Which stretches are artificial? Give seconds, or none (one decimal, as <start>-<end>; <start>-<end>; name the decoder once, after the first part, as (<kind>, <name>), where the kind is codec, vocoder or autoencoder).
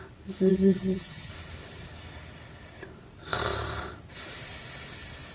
0.5-1.3 (vocoder, HiFi-GAN)